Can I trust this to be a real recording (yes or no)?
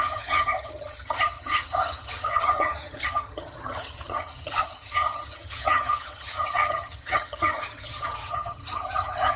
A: no